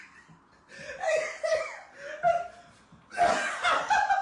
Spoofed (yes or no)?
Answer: no